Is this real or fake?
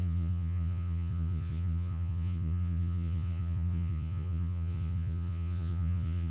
fake